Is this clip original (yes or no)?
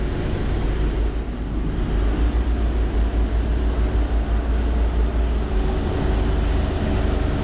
yes